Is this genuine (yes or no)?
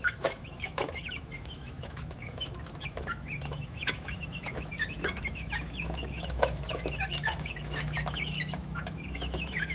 no